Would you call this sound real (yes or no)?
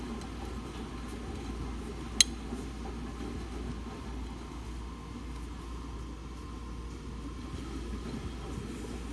yes